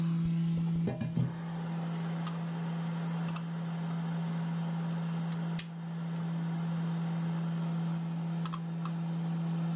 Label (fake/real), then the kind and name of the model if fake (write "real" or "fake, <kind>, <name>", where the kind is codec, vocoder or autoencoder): real